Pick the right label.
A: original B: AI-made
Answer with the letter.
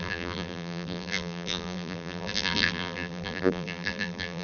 B